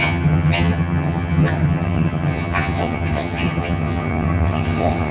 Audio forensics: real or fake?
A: fake